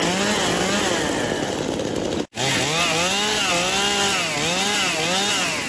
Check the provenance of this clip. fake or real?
real